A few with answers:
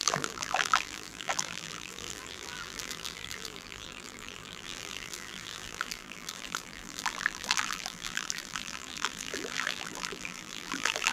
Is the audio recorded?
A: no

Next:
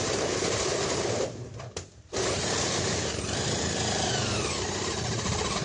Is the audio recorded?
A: no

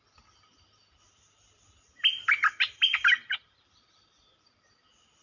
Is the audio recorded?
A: no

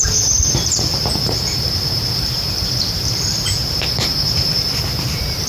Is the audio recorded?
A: no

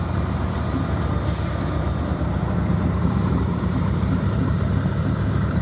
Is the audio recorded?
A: no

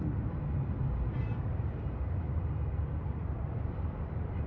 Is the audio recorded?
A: no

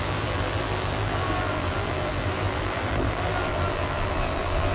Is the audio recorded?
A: no